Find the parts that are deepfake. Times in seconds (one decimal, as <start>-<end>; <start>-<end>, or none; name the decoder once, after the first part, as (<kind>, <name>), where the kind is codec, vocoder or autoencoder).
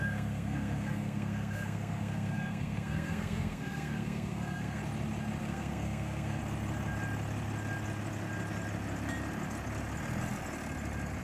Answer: 0.0-4.8 (codec, SNAC); 5.4-6.4